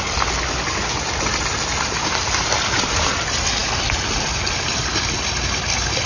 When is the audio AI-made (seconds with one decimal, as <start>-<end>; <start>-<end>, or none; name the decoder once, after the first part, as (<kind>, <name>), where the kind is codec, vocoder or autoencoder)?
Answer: 1.7-2.9 (vocoder, BigVGAN v2)